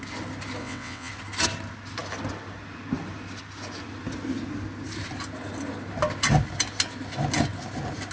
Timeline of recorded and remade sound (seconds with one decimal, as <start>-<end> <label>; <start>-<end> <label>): 0.0-0.6 recorded; 0.6-1.1 remade; 1.1-8.1 recorded